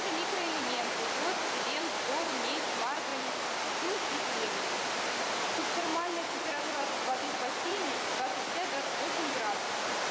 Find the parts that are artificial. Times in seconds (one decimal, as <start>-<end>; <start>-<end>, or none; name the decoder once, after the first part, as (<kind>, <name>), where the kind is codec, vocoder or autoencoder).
0.0-10.1 (vocoder, BigVGAN v2)